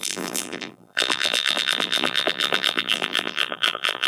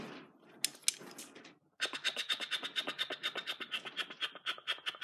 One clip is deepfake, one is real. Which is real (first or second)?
second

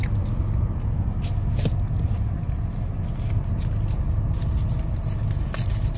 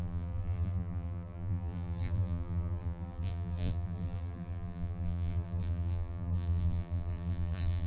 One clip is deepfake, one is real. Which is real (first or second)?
first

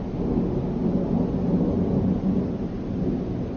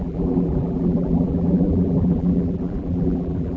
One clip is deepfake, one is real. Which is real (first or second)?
first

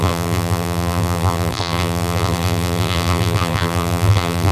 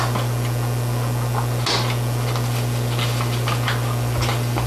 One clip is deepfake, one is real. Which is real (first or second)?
second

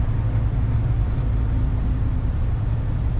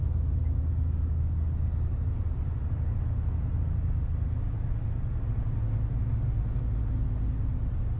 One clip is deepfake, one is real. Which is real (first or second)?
second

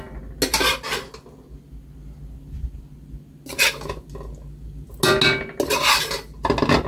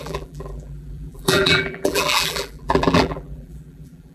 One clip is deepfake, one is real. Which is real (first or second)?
first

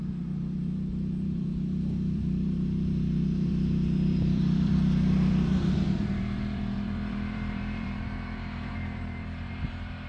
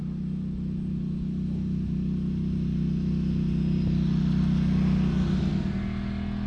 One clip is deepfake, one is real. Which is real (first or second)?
second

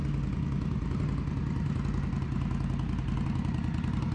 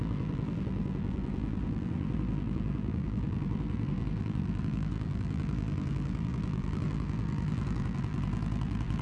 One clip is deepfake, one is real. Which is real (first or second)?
first